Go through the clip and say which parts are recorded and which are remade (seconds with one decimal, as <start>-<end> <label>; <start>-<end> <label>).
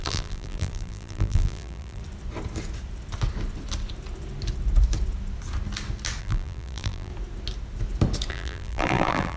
0.0-2.0 remade; 2.0-6.2 recorded; 6.2-7.1 remade; 7.1-8.3 recorded; 8.3-9.4 remade